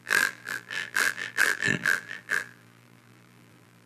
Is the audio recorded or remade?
remade